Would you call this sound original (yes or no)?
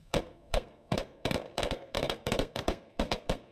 no